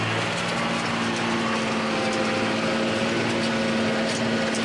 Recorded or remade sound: recorded